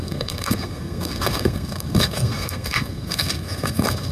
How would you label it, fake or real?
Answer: fake